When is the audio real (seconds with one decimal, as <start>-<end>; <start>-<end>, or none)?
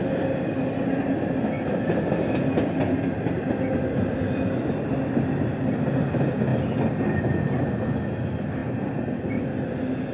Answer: 0.0-10.1